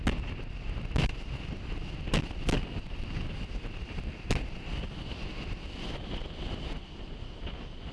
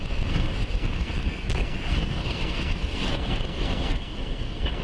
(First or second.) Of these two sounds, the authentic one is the first